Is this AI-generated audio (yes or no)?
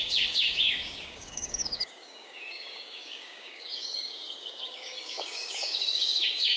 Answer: yes